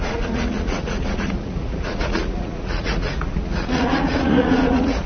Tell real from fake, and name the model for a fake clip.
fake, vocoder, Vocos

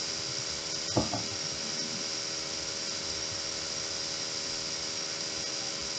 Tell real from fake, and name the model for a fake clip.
real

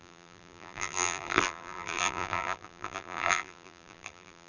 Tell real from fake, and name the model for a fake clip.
fake, vocoder, BigVGAN v2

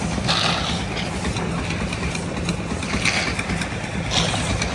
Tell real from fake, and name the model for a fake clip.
real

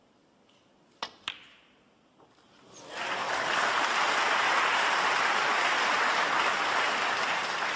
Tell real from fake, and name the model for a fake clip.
real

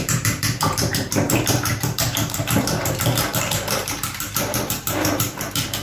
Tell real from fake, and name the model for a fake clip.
fake, vocoder, BigVGAN v2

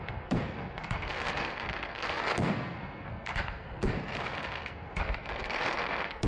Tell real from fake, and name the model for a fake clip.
fake, codec, SNAC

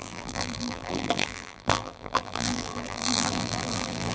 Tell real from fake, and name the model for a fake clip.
fake, vocoder, BigVGAN v2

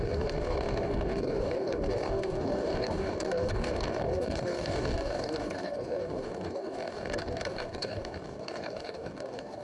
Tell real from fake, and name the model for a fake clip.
fake, codec, DAC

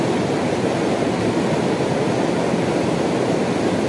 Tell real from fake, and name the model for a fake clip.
real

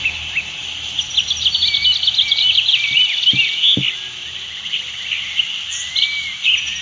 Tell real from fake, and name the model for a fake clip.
real